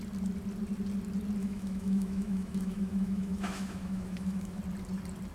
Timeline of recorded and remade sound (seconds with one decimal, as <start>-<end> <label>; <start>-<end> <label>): 0.0-1.4 recorded; 1.4-4.6 remade; 4.6-5.3 recorded